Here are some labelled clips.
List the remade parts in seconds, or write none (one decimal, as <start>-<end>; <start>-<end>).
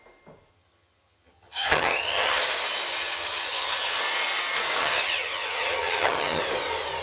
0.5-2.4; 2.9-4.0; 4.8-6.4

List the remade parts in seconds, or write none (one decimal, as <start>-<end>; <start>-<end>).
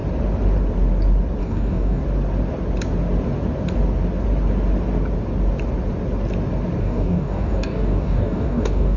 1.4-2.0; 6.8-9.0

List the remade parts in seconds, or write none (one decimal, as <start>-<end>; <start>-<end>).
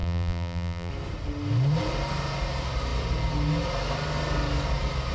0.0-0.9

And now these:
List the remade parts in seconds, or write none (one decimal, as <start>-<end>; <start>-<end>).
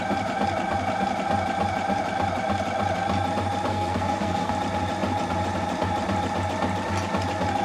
3.7-4.5